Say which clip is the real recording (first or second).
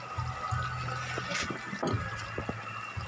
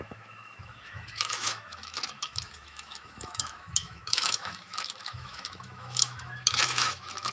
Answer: first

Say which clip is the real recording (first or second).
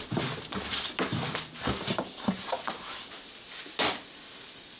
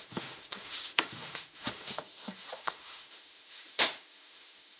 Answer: first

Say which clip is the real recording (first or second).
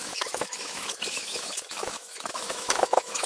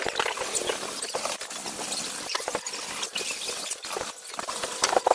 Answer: second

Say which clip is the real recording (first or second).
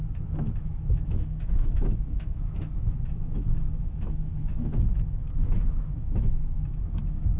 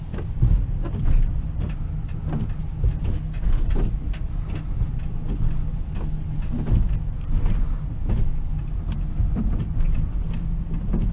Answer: second